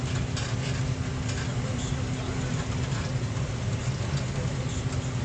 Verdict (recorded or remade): recorded